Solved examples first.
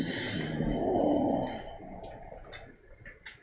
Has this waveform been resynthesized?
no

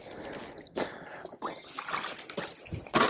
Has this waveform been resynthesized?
no